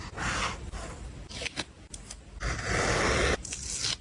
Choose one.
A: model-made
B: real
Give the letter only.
B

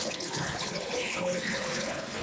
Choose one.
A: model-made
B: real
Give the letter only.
A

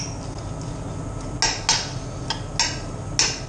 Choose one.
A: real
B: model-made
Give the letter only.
A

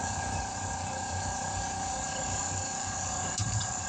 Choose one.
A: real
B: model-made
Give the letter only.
B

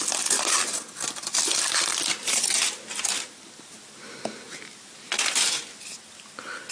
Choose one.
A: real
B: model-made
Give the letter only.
A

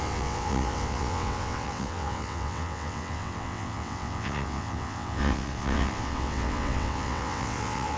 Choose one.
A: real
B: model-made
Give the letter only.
B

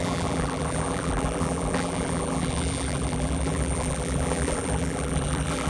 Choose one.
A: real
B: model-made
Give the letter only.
B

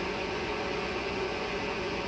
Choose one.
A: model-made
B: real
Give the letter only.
A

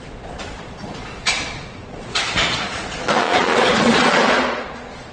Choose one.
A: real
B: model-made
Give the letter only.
B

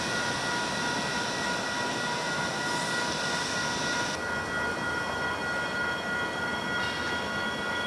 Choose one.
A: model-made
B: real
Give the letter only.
B